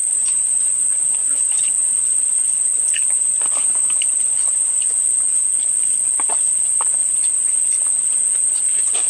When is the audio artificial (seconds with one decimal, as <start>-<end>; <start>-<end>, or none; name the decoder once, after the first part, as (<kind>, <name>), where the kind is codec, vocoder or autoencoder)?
0.0-0.6 (vocoder, BigVGAN v2); 1.2-2.3; 7.0-7.9